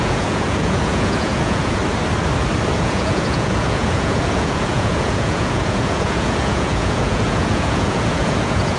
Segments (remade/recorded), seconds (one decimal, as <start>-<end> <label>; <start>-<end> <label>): 0.0-1.8 remade; 1.8-2.7 recorded; 2.7-8.8 remade

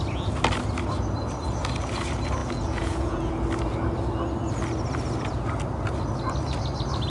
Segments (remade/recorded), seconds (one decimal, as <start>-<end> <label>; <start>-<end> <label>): 0.0-2.4 recorded; 2.4-3.3 remade; 3.3-7.1 recorded

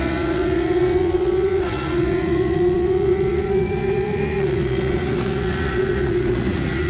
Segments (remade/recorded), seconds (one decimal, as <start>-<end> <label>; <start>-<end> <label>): 0.0-6.9 remade

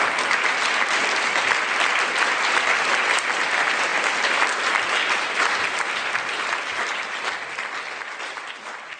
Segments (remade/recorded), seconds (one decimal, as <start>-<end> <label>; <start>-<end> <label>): 0.0-9.0 recorded

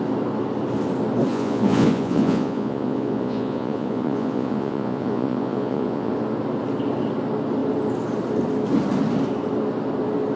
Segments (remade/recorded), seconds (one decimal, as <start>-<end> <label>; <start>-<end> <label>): 0.0-1.3 recorded; 1.3-6.1 remade; 6.1-10.4 recorded